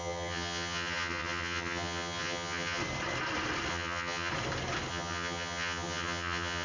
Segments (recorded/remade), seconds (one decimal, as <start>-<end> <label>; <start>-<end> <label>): 0.0-2.8 remade; 2.8-3.7 recorded; 3.7-4.3 remade; 4.3-4.9 recorded; 4.9-6.6 remade